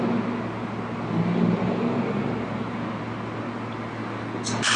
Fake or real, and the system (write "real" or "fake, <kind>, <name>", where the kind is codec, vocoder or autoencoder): real